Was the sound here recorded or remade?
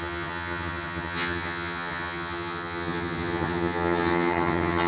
remade